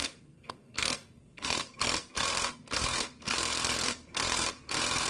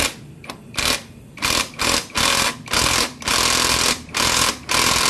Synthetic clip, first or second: first